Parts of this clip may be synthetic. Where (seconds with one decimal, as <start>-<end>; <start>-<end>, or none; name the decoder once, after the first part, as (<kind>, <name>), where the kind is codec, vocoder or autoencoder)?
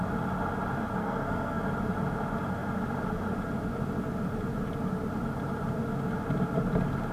1.0-1.6 (codec, SNAC)